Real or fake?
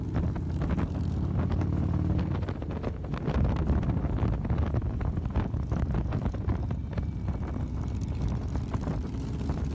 real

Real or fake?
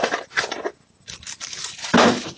real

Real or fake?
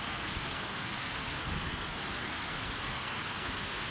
fake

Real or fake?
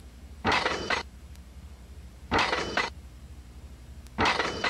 fake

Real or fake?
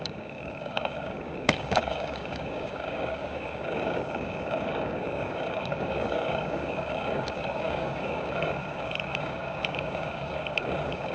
fake